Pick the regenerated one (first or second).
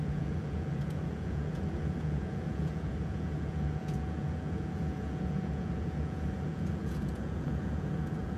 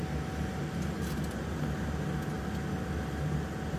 first